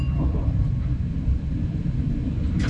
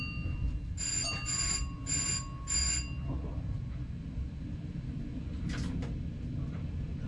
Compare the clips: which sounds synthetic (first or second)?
first